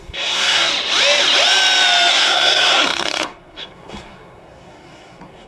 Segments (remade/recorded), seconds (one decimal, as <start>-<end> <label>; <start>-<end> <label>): 0.0-0.7 remade; 0.7-2.1 recorded; 2.1-5.5 remade